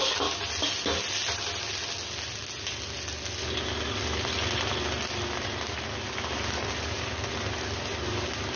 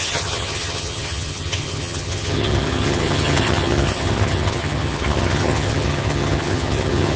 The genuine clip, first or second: first